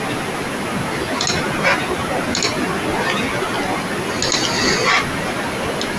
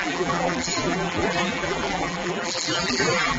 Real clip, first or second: first